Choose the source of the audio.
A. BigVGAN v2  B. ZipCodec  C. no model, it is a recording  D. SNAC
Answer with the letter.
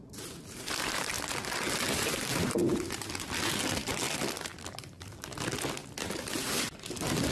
C